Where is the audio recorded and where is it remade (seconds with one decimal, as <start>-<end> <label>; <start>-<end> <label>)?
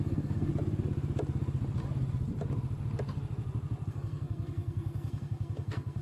0.0-0.5 remade; 0.5-3.9 recorded; 3.9-6.0 remade